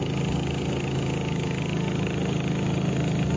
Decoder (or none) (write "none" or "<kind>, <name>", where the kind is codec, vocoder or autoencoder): none